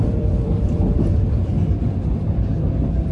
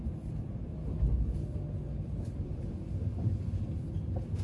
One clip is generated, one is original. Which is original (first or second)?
second